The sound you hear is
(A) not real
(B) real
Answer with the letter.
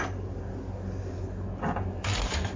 B